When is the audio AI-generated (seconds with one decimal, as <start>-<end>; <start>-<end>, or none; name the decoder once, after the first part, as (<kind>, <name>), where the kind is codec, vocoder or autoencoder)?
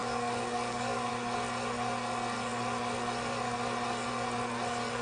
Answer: 0.0-1.1 (codec, DAC)